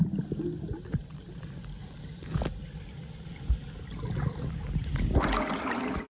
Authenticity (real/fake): real